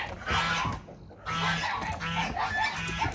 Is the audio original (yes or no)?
yes